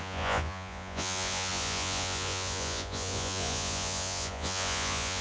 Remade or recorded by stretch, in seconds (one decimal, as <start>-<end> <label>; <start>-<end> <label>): 0.0-5.2 remade